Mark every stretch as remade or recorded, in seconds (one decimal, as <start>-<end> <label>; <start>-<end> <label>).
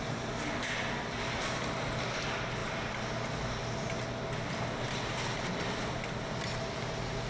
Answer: 0.0-7.3 recorded